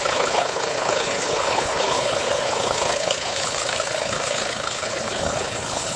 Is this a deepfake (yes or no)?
yes